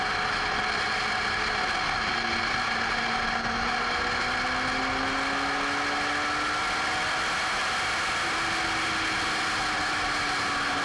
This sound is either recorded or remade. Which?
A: recorded